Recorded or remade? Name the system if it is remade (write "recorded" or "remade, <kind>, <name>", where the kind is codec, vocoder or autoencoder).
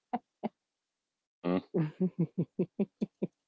recorded